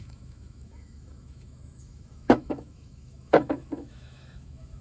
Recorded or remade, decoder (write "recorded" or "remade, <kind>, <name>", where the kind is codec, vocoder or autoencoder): remade, autoencoder, DAC-VAE